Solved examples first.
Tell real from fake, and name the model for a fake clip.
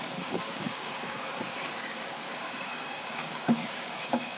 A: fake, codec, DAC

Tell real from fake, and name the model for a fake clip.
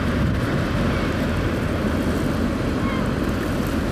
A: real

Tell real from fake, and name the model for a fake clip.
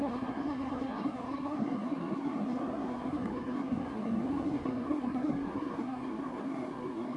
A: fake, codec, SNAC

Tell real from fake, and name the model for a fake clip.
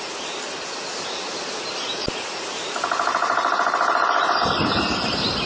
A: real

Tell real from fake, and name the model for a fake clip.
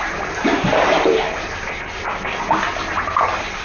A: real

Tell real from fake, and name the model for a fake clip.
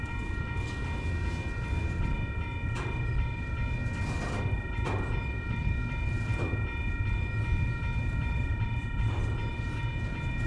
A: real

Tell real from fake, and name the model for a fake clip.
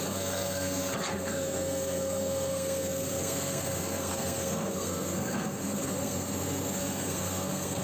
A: fake, codec, SNAC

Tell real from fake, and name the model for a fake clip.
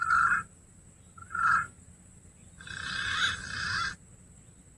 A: real